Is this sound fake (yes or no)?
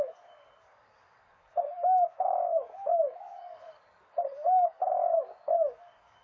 yes